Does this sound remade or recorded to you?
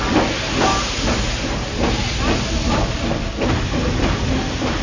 recorded